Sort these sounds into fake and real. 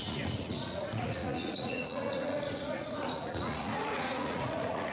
fake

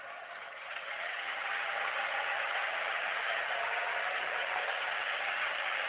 fake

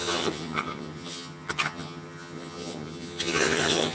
fake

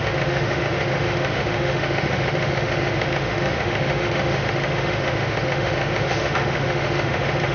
fake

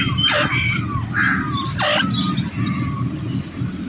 real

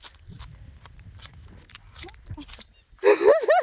real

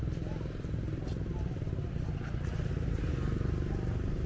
real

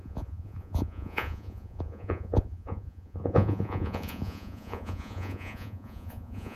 fake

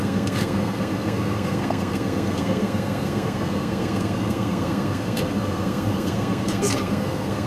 fake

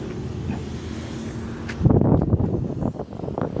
real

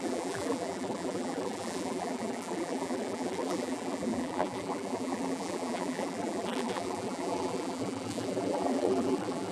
fake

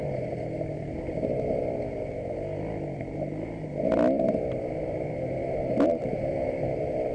fake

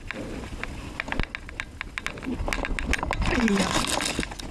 real